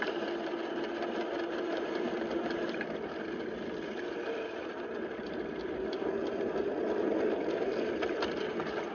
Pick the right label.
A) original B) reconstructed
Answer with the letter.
B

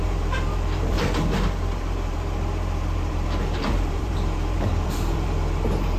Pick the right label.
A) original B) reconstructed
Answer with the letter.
B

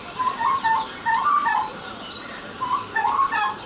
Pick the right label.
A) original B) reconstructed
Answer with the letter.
B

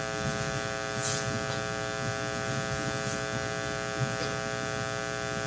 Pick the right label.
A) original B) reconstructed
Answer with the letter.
A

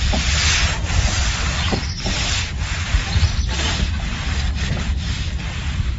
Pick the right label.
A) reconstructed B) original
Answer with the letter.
A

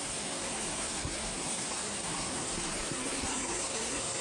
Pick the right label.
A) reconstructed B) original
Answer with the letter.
A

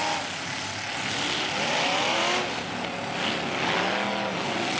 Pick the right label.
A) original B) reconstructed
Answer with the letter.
A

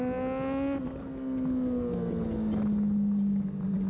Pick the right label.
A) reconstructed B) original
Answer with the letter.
B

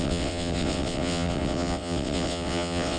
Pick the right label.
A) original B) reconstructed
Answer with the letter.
B